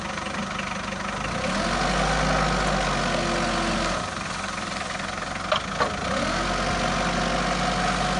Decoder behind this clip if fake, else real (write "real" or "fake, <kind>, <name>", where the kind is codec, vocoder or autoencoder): real